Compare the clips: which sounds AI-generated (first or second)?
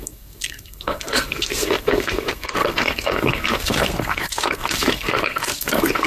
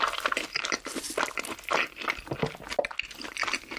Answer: first